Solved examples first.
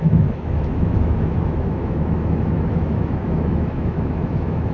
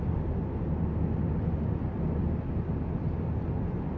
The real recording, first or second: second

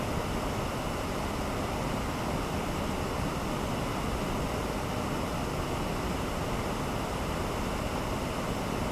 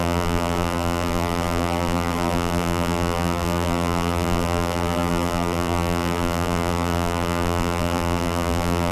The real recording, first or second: first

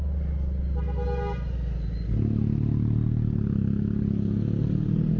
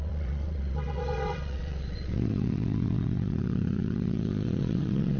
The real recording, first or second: first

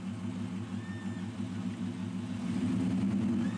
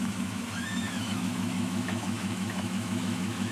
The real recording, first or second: first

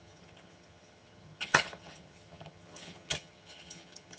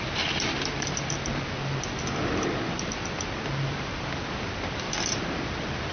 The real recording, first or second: second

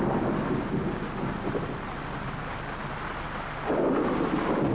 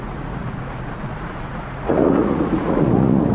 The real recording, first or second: first